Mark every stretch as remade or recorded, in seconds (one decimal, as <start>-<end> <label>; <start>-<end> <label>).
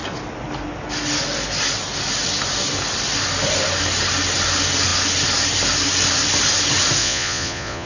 0.0-7.0 recorded; 7.0-7.9 remade